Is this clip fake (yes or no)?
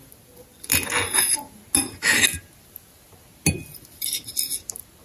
no